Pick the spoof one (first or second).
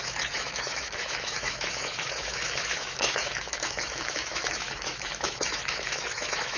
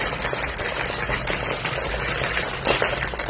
first